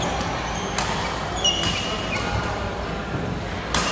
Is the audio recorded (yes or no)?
yes